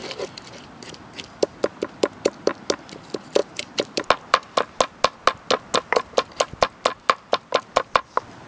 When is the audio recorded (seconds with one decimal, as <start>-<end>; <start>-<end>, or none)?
0.0-8.5